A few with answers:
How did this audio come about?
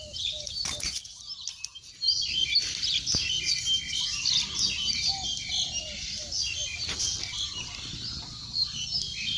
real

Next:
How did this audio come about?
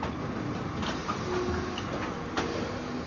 real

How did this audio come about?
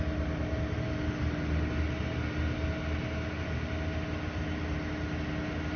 real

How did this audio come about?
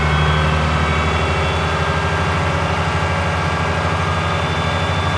real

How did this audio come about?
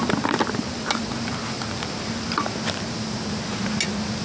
real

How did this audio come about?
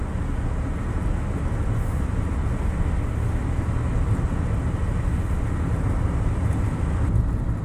real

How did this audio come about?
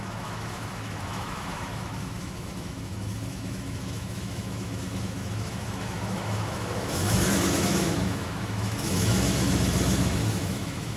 fake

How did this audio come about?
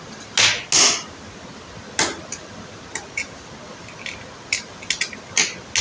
real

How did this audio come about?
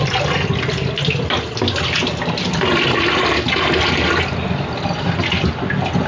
real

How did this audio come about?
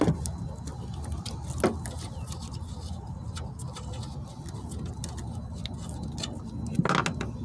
real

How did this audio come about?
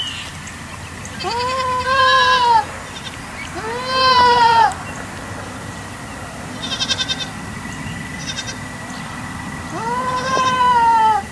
real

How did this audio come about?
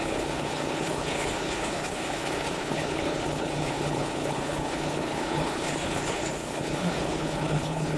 fake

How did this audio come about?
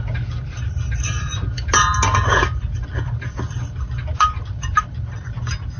real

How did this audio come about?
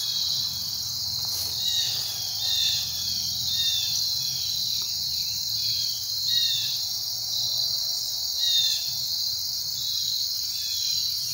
real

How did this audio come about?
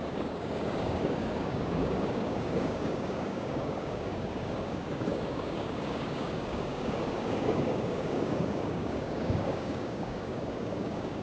fake